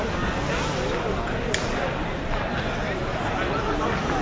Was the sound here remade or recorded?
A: recorded